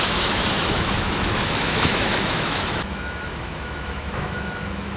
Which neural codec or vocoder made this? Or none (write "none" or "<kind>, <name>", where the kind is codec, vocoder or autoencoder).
autoencoder, DAC-VAE